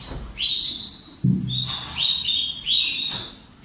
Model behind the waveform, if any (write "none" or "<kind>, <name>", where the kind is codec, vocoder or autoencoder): none